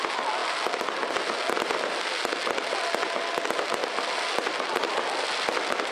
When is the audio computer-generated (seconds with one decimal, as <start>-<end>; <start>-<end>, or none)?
0.4-1.1